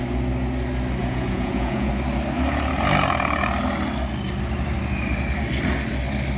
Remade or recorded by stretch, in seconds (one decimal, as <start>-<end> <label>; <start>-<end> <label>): 0.0-1.0 recorded; 1.0-1.9 remade; 1.9-6.4 recorded